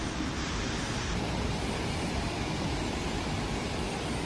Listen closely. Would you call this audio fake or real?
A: real